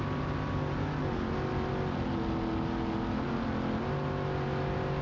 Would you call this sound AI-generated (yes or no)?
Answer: no